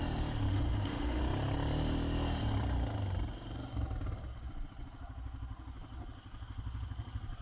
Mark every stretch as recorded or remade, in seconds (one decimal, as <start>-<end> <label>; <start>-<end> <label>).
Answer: 0.0-0.5 recorded; 0.5-1.2 remade; 1.2-7.4 recorded